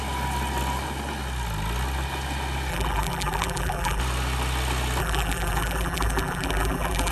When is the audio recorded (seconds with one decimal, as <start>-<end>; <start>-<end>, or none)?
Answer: 0.0-2.7; 4.0-5.0